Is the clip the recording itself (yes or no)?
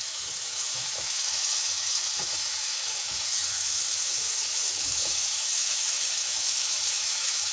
no